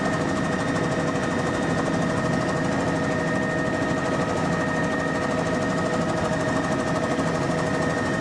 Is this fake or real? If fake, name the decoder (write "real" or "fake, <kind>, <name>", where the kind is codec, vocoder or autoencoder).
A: real